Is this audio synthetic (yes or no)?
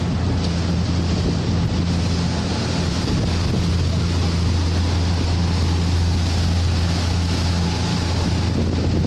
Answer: no